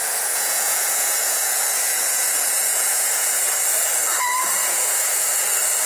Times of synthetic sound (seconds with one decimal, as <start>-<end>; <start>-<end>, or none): 0.0-3.4; 4.6-5.4